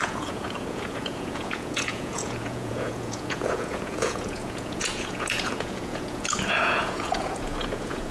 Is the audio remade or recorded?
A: remade